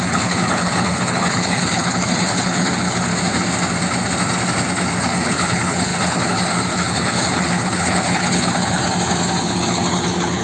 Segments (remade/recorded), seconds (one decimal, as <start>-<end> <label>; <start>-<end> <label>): 0.0-3.1 remade; 3.1-5.0 recorded; 5.0-8.8 remade; 8.8-9.4 recorded; 9.4-10.4 remade